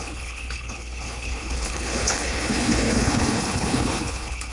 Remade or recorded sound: remade